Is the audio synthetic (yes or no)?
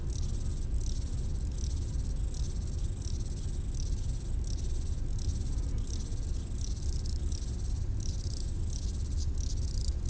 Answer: no